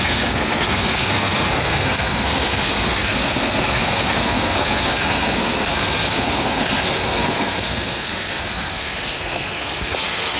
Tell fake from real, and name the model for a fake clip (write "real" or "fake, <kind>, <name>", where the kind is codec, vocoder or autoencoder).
fake, codec, SNAC